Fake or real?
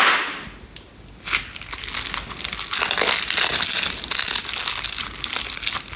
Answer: real